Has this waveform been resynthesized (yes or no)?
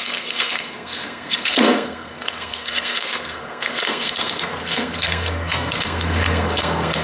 yes